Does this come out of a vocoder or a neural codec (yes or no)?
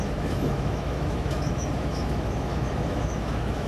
yes